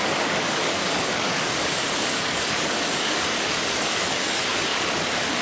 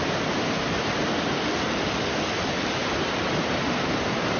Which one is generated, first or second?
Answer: first